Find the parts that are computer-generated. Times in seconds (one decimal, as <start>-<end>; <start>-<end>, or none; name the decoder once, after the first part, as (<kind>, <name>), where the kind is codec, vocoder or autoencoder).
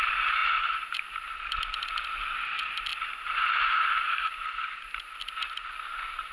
none